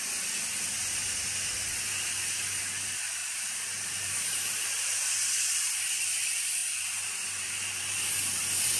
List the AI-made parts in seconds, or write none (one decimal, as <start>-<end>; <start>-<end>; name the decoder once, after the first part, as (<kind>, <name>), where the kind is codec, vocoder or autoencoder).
3.2-5.1 (vocoder, BigVGAN v2)